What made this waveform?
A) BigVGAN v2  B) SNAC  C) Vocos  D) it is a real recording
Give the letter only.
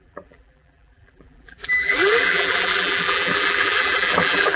A